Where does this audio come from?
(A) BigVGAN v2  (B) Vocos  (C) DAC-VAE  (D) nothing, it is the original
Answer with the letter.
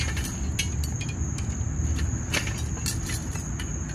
D